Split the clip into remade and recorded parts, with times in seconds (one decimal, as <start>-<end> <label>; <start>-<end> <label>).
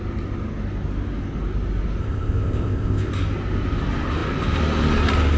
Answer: 0.0-2.0 recorded; 2.0-3.1 remade; 3.1-5.4 recorded